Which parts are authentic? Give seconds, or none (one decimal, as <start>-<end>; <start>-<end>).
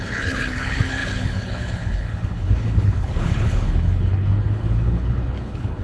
none